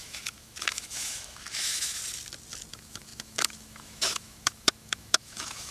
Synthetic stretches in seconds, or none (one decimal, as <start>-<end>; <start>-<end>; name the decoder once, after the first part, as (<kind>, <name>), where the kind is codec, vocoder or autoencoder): 0.0-2.0 (autoencoder, DAC-VAE); 2.7-5.7